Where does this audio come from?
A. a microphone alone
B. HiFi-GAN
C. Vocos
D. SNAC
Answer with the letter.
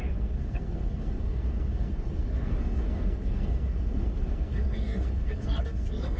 D